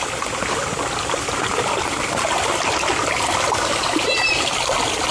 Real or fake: fake